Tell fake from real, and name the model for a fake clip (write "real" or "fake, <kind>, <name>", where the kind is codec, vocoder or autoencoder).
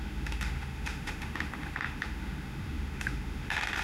fake, autoencoder, DAC-VAE